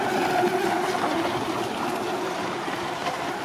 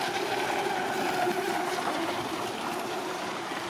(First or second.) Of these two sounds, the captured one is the first